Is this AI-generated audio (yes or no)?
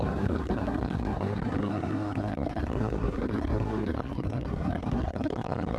yes